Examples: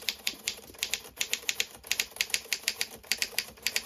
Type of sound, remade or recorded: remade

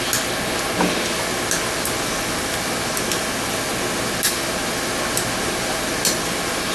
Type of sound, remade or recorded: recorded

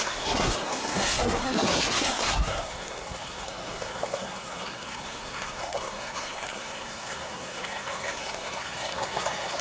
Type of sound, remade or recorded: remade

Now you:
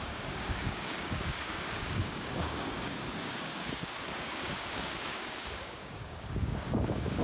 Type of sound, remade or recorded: remade